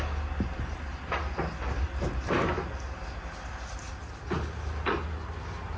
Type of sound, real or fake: real